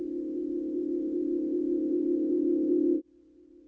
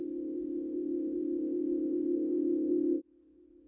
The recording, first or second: first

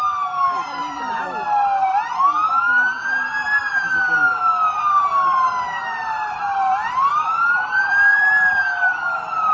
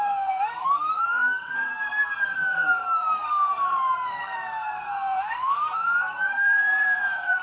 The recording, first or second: first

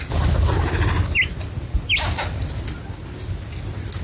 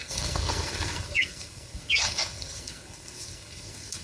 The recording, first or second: first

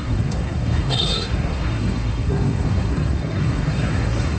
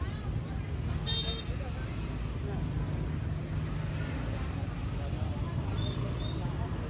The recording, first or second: second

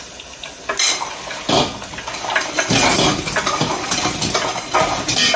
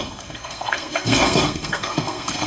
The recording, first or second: first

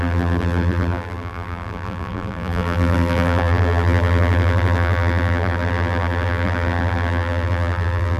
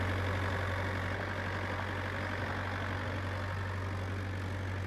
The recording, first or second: second